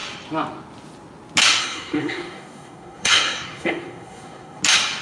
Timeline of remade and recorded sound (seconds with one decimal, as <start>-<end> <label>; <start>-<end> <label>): 0.0-1.6 recorded; 1.6-4.6 remade; 4.6-5.0 recorded